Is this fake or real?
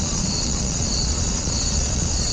fake